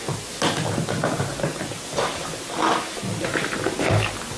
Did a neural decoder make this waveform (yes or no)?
no